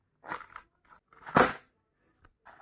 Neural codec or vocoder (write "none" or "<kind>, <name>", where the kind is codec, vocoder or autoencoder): none